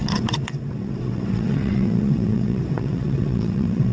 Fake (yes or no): yes